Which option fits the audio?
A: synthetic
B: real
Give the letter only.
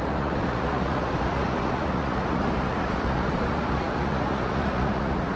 A